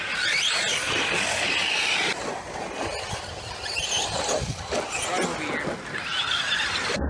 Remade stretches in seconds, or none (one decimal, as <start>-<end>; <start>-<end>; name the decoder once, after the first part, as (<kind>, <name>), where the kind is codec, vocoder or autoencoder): none